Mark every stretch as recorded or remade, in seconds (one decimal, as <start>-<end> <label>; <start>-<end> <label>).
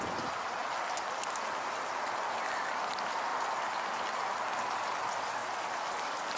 0.0-6.4 recorded